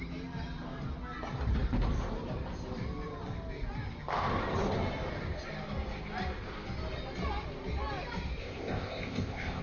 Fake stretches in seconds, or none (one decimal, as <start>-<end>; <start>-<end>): 8.4-9.6